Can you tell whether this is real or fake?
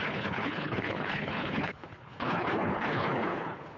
fake